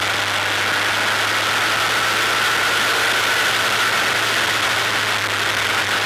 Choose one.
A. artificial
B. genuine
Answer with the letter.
B